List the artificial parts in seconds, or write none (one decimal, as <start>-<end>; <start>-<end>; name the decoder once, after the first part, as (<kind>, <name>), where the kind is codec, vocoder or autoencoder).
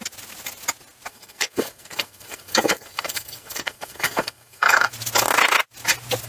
1.1-4.9 (codec, SNAC)